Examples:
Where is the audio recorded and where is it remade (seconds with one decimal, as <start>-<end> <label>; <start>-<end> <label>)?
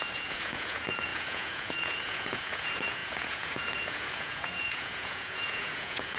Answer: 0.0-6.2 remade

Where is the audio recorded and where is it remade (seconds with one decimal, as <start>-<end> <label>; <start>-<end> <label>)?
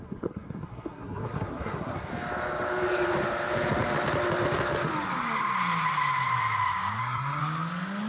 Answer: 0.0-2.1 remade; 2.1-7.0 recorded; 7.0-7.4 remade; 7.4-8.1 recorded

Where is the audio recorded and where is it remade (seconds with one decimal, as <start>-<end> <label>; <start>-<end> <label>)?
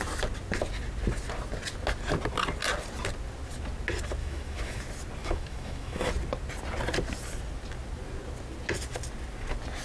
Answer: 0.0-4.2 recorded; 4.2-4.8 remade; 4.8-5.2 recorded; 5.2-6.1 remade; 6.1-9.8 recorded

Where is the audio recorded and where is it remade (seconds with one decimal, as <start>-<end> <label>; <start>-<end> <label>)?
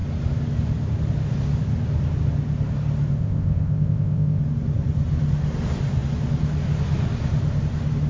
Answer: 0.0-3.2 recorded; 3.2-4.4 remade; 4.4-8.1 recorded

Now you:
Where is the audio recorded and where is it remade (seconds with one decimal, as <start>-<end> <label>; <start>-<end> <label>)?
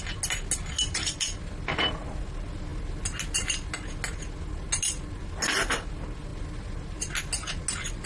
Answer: 0.0-8.1 recorded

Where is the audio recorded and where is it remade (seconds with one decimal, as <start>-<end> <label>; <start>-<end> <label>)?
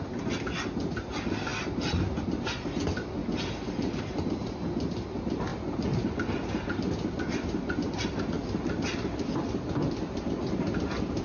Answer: 0.0-11.2 recorded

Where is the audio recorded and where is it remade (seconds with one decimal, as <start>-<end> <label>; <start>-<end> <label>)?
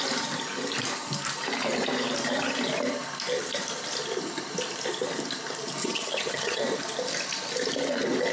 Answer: 0.0-5.8 recorded; 5.8-6.6 remade; 6.6-8.3 recorded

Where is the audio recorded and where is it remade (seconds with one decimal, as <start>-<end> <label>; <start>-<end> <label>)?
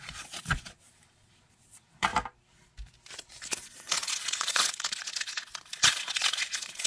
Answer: 0.0-2.1 remade; 2.1-3.5 recorded; 3.5-6.9 remade